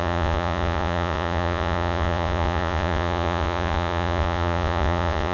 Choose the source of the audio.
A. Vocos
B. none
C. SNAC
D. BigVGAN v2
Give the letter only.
A